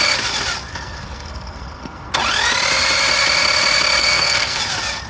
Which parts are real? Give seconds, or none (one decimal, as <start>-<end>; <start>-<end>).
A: 0.0-0.7; 2.1-4.0; 4.6-5.1